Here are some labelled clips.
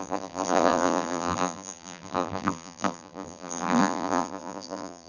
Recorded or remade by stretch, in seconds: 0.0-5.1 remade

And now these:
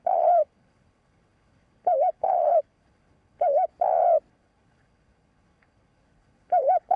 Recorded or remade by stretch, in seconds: 0.0-3.7 remade; 3.7-4.3 recorded; 4.3-7.0 remade

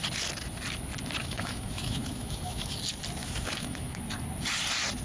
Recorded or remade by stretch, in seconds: 0.0-1.2 recorded; 1.2-2.8 remade; 2.8-3.2 recorded; 3.2-4.0 remade; 4.0-5.0 recorded